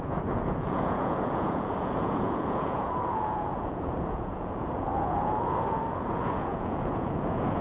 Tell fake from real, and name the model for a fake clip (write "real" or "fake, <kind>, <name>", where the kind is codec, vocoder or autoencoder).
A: fake, vocoder, Vocos